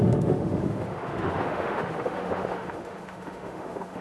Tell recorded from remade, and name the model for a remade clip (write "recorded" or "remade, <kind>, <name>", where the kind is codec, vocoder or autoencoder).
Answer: remade, autoencoder, DAC-VAE